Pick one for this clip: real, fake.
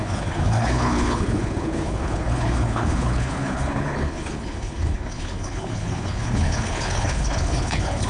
fake